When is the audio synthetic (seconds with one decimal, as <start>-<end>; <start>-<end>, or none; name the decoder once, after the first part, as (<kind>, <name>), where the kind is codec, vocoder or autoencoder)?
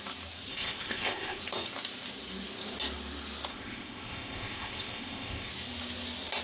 0.5-1.4 (codec, ZipCodec); 3.5-5.5